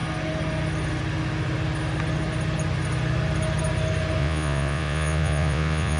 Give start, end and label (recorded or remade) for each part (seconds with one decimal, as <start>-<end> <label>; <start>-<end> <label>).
0.0-4.2 recorded; 4.2-6.0 remade